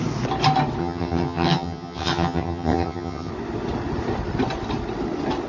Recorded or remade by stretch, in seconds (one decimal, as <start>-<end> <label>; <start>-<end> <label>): 0.0-0.8 recorded; 0.8-3.3 remade; 3.3-5.5 recorded